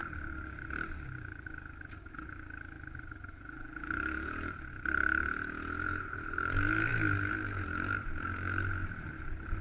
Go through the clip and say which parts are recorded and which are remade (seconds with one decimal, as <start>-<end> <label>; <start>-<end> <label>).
0.0-9.6 recorded